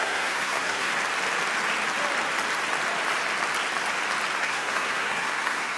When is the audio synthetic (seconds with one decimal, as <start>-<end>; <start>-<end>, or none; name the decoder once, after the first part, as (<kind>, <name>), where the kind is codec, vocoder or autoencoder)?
0.0-0.9 (codec, SNAC); 4.4-5.8